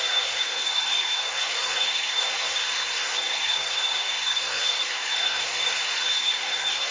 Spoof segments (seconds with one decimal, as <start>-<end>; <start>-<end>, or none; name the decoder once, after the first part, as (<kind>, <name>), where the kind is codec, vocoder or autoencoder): 0.0-6.9 (codec, SNAC)